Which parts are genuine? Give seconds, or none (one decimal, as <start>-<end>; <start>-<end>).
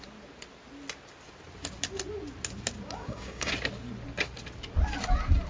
0.0-3.0; 3.5-5.5